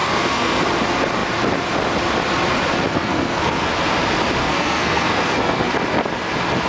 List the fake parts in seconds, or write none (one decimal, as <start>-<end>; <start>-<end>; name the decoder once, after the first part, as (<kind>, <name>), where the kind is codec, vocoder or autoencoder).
0.0-0.6 (codec, SNAC); 2.9-3.7; 4.4-5.7